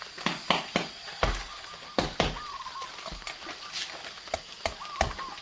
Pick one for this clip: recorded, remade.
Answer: recorded